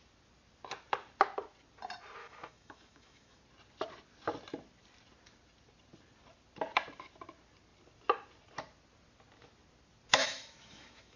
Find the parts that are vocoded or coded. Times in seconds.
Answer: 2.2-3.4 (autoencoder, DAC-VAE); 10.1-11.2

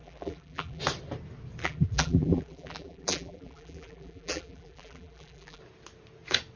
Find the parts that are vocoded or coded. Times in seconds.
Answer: 0.0-0.8 (vocoder, BigVGAN v2); 1.6-5.6

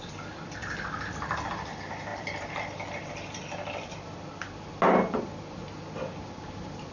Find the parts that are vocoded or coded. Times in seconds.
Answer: none

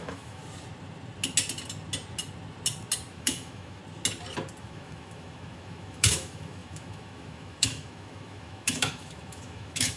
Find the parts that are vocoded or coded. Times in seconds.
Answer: 0.0-0.4 (autoencoder, DAC-VAE); 3.1-3.8; 4.6-10.0

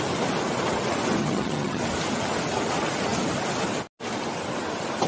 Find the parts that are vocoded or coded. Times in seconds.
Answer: 1.2-1.8 (vocoder, HiFi-GAN)

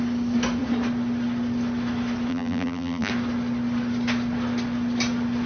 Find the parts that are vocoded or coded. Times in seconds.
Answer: 2.3-3.1 (vocoder, BigVGAN v2)

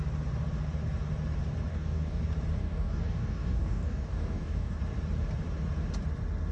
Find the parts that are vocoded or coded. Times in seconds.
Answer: 1.7-2.2 (codec, DAC); 2.6-4.8